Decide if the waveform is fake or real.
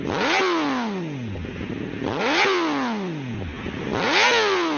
real